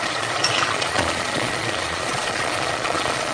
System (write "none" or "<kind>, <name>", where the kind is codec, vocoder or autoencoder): vocoder, Vocos